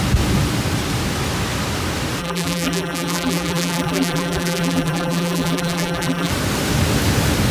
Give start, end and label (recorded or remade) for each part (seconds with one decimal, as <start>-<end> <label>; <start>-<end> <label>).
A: 0.0-2.2 recorded; 2.2-6.3 remade; 6.3-7.5 recorded